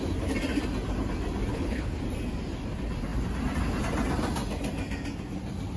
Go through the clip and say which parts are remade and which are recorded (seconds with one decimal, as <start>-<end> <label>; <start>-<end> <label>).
0.0-1.5 recorded; 1.5-2.0 remade; 2.0-5.8 recorded

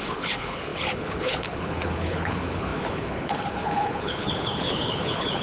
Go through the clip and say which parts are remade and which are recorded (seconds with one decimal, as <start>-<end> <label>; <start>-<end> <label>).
0.0-5.4 remade

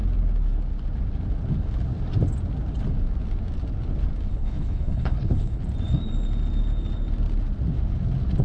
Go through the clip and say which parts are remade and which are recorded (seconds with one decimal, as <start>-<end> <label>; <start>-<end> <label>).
0.0-4.3 recorded; 4.3-5.6 remade; 5.6-8.4 recorded

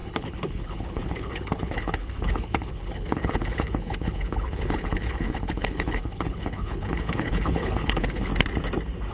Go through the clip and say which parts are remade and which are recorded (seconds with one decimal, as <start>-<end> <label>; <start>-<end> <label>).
0.0-8.3 remade; 8.3-9.1 recorded

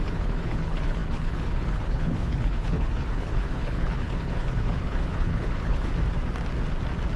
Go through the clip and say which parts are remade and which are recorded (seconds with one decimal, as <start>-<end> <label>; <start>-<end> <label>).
0.0-5.9 remade; 5.9-7.2 recorded